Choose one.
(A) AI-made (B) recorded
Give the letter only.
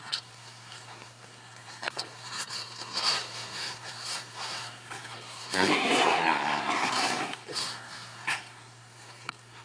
A